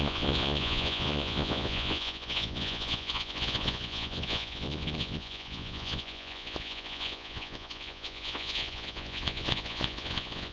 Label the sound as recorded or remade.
remade